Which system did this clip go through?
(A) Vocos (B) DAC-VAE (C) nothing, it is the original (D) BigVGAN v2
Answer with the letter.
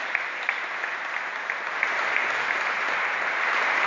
C